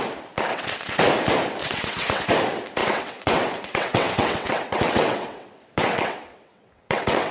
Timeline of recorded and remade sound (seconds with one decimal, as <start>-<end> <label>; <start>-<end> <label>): 0.0-0.5 recorded; 0.5-1.0 remade; 1.0-1.6 recorded; 1.6-2.3 remade; 2.3-2.8 recorded; 2.8-7.3 remade